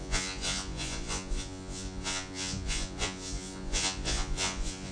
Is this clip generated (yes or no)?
yes